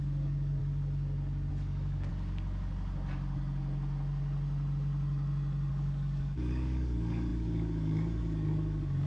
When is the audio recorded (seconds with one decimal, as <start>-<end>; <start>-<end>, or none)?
0.6-1.5; 2.1-5.7